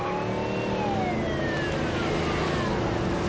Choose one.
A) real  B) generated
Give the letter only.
A